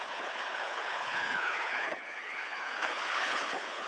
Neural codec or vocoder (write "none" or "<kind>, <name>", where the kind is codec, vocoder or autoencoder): codec, HILCodec